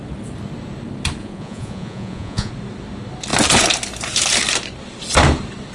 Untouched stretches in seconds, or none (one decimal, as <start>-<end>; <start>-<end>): 0.0-1.2; 2.5-5.7